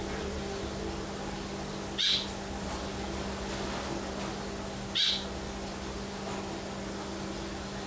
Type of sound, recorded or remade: recorded